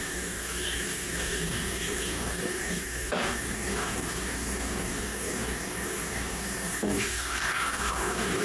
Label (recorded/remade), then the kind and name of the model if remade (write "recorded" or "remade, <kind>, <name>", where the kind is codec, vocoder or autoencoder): remade, codec, DAC